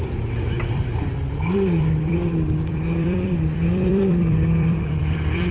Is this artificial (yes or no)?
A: yes